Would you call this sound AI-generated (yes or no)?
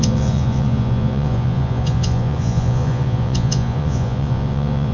yes